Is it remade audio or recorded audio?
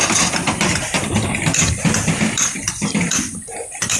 remade